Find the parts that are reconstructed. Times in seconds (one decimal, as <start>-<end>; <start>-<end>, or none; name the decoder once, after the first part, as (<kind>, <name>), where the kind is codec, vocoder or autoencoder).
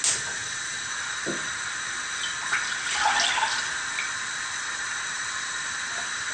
none